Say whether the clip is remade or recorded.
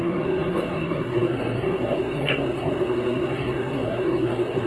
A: remade